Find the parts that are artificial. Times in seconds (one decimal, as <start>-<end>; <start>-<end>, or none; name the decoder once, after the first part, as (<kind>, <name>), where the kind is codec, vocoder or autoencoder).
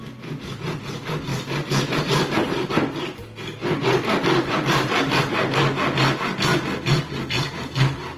1.3-2.7 (vocoder, BigVGAN v2); 3.6-5.2